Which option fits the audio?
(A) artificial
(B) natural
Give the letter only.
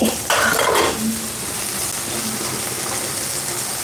B